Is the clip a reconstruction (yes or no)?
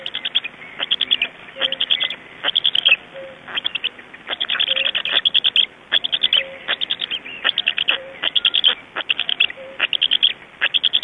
no